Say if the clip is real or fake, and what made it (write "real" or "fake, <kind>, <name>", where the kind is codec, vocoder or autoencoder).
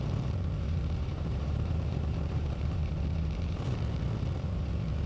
fake, vocoder, BigVGAN v2